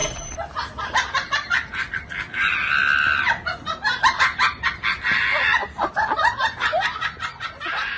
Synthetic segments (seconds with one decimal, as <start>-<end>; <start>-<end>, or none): 0.0-1.9